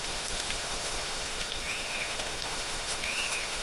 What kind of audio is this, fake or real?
fake